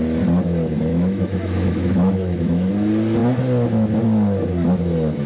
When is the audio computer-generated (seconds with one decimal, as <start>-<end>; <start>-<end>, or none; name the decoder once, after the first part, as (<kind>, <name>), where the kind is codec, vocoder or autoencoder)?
0.9-2.7 (autoencoder, DAC-VAE)